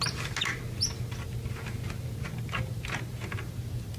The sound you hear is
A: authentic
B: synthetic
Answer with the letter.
A